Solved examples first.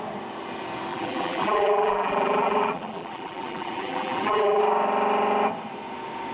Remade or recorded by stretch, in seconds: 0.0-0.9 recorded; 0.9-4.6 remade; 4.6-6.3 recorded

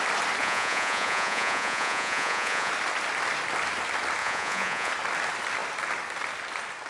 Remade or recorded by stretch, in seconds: 0.0-0.4 recorded; 0.4-2.7 remade; 2.7-4.2 recorded; 4.2-4.9 remade; 4.9-6.9 recorded